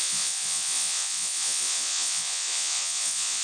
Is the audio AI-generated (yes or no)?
yes